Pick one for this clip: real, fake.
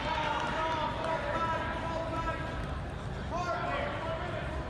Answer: real